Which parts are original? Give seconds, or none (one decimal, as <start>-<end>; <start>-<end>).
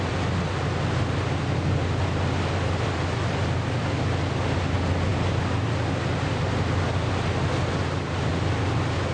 0.0-9.1